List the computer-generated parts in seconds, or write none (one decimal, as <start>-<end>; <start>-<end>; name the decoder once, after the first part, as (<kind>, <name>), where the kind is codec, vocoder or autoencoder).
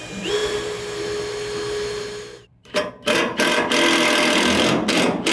0.4-1.0 (vocoder, BigVGAN v2); 2.6-3.6